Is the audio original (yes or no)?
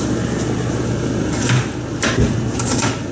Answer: yes